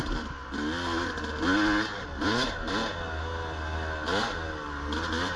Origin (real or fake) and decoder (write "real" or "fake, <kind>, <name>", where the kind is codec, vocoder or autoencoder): real